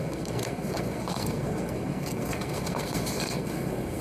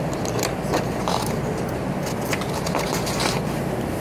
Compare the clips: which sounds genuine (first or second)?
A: second